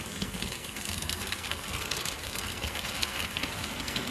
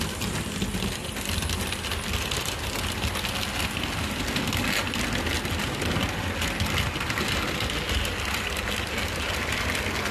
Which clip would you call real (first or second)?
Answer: second